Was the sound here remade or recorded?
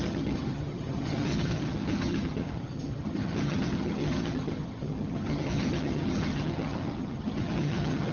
remade